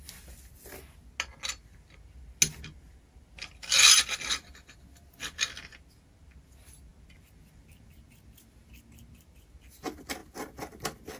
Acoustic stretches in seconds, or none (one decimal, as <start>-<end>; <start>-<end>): 0.0-11.2